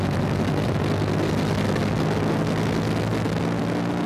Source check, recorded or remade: recorded